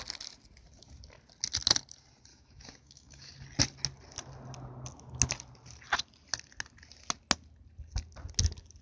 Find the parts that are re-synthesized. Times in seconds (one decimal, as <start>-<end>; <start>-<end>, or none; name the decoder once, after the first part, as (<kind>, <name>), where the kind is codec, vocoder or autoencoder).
2.3-3.3 (autoencoder, DAC-VAE)